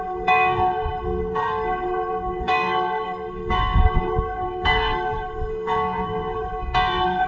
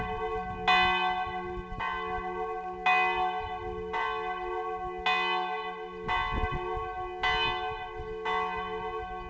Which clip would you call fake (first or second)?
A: first